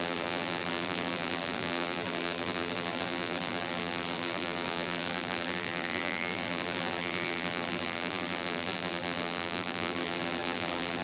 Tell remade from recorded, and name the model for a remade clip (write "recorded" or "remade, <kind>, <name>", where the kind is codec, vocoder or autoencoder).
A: remade, vocoder, BigVGAN v2